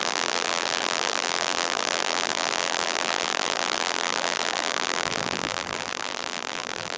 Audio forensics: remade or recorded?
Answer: remade